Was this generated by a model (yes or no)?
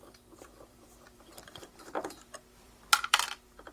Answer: yes